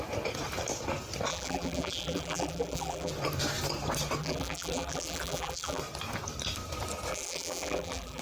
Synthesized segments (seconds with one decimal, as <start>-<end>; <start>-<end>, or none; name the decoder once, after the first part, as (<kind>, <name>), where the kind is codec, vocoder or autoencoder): 1.3-3.1 (vocoder, BigVGAN v2); 4.2-5.8; 7.1-8.2